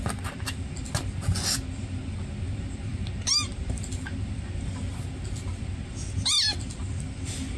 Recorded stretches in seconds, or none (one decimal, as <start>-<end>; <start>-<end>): 0.0-7.6